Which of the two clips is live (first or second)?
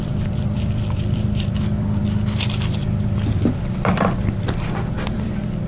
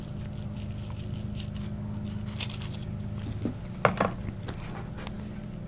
second